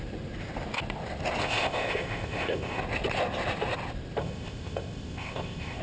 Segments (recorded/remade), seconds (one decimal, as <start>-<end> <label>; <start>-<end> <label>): 0.0-1.4 recorded; 1.4-2.8 remade; 2.8-4.2 recorded; 4.2-5.8 remade